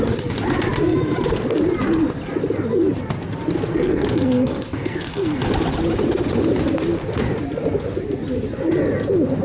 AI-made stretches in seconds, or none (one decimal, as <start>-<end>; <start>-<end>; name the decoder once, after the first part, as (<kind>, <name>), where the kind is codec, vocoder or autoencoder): 3.7-5.4 (codec, SNAC)